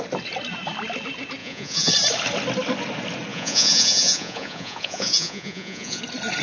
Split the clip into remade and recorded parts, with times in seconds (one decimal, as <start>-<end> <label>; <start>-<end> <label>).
0.0-1.4 recorded; 1.4-1.9 remade; 1.9-3.3 recorded; 3.3-6.0 remade; 6.0-6.4 recorded